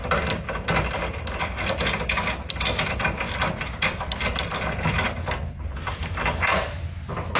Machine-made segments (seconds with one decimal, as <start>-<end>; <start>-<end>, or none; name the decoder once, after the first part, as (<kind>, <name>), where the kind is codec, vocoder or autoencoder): none